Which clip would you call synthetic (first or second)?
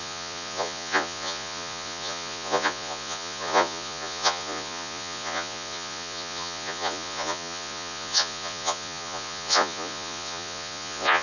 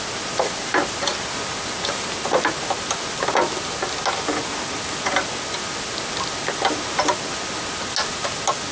first